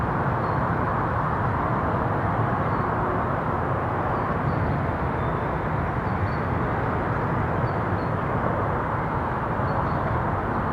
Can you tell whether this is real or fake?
real